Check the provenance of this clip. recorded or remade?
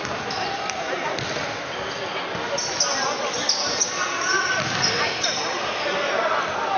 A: recorded